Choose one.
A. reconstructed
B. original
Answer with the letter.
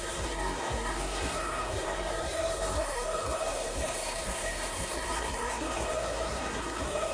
A